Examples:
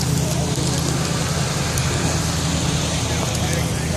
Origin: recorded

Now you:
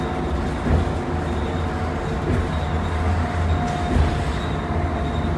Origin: recorded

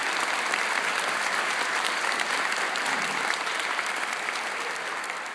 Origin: remade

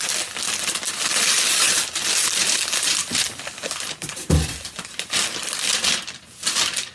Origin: recorded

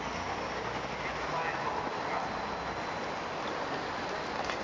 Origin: recorded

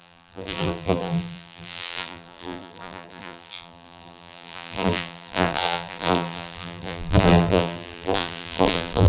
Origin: remade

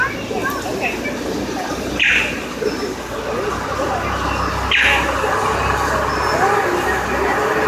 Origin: recorded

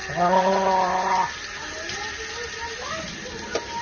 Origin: recorded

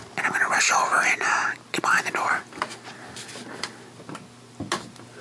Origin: recorded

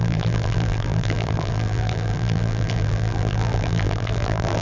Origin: remade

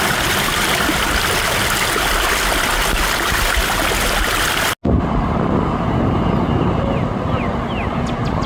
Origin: recorded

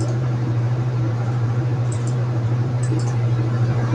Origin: remade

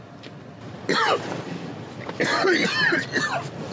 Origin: recorded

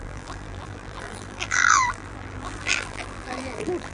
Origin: remade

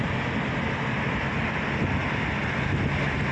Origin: recorded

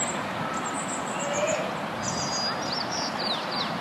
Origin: recorded